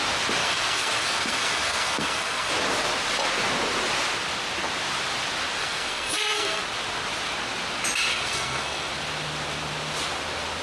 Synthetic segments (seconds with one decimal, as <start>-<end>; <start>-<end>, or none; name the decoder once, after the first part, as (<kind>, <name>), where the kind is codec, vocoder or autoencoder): 0.4-2.5 (codec, SNAC); 5.6-6.6; 8.1-8.9